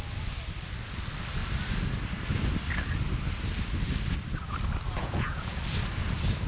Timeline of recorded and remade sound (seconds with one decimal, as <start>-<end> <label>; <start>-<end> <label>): 0.0-5.0 recorded; 5.0-5.6 remade; 5.6-6.5 recorded